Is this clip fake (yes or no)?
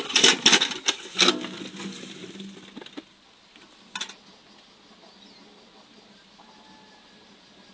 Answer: no